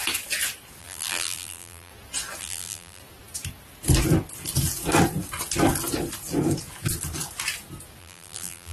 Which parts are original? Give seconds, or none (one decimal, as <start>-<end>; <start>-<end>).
0.0-0.8; 1.9-2.4; 3.0-8.0